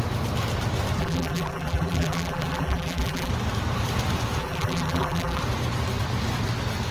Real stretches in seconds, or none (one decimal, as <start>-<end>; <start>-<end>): 0.0-1.0; 3.3-4.4; 5.4-6.9